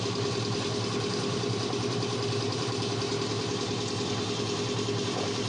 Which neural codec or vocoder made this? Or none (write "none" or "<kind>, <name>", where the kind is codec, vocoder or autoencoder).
none